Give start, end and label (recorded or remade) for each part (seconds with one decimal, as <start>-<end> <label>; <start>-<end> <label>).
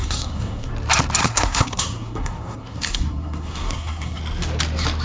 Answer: 0.0-0.7 remade; 0.7-1.2 recorded; 1.2-4.2 remade; 4.2-5.0 recorded